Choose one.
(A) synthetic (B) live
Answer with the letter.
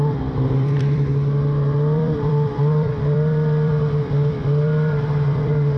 A